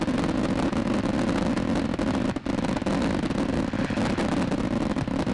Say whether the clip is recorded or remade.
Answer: recorded